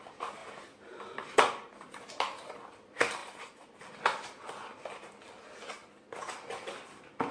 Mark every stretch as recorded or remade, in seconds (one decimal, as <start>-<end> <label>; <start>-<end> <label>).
0.0-0.4 recorded; 0.4-1.0 remade; 1.0-3.2 recorded; 3.2-3.8 remade; 3.8-7.3 recorded

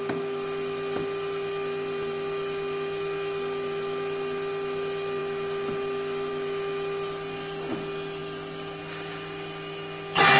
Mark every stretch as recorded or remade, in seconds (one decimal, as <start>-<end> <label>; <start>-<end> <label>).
0.0-10.4 recorded

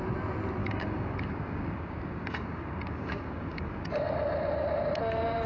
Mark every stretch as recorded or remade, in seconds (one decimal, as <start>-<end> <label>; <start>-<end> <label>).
0.0-0.6 recorded; 0.6-3.9 remade; 3.9-5.5 recorded

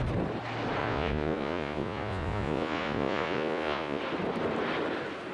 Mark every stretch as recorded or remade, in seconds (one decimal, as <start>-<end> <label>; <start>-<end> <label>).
0.0-0.8 recorded; 0.8-4.0 remade; 4.0-5.3 recorded